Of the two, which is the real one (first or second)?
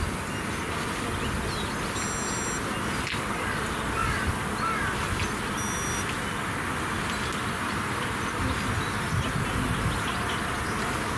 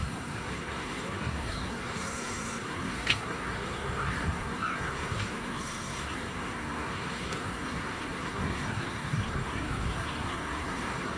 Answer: first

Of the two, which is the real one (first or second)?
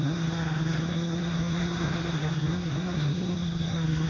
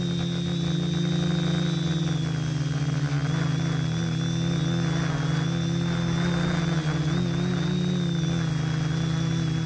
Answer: second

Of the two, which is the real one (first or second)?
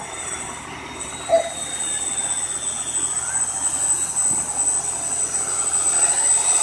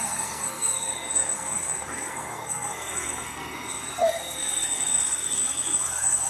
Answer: first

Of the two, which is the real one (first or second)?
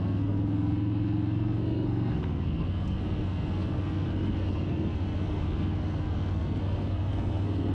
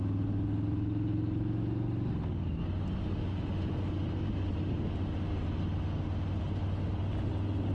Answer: second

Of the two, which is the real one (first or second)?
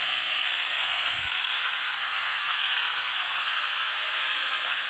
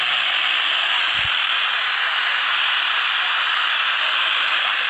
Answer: second